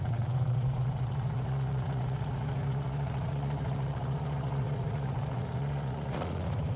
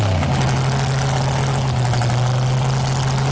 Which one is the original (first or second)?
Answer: second